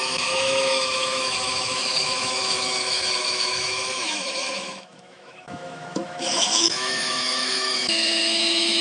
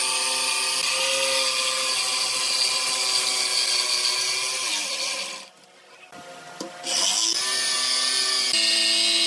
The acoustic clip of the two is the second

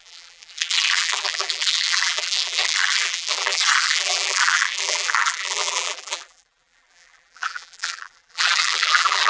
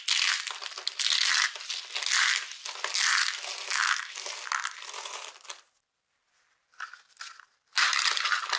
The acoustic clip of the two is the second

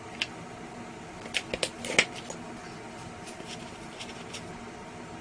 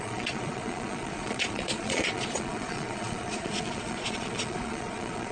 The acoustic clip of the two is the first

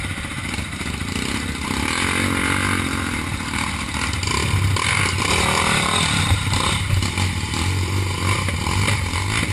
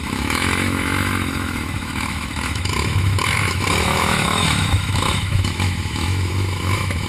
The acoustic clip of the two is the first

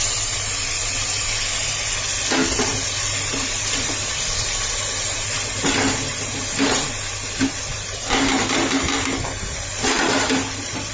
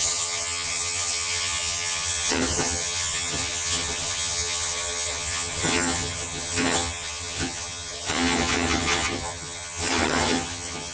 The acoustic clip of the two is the first